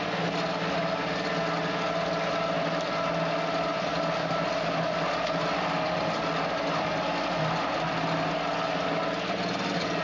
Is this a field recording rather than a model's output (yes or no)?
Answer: yes